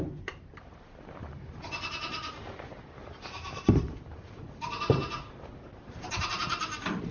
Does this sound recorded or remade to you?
remade